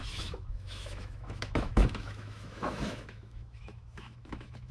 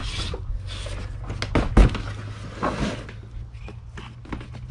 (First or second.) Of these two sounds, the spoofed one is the first